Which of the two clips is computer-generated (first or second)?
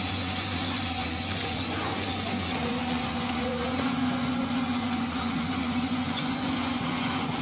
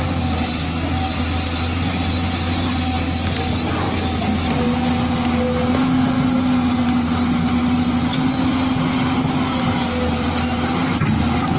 first